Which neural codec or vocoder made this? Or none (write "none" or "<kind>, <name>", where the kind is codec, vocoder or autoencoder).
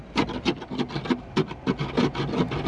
none